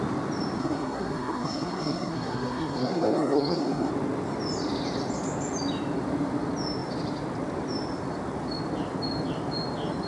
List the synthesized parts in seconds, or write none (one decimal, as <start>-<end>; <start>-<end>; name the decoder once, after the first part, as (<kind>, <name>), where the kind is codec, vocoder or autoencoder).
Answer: 0.6-3.9 (codec, SNAC)